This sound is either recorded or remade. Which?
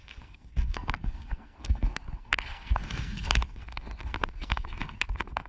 remade